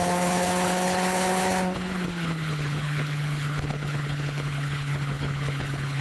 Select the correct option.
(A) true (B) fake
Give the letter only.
B